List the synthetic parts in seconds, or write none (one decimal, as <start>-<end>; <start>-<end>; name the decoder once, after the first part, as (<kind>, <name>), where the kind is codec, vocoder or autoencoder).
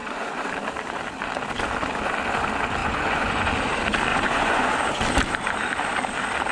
0.0-0.5 (vocoder, Vocos); 2.8-3.5; 4.1-4.7